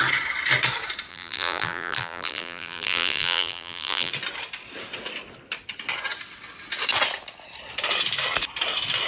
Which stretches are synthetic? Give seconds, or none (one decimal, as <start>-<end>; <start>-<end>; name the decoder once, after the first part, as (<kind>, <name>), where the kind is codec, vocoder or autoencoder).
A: 1.1-4.1 (vocoder, BigVGAN v2)